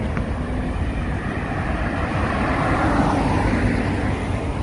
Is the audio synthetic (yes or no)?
no